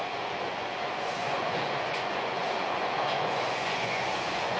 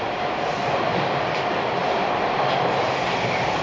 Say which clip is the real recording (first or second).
second